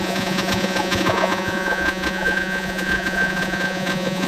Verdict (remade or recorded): remade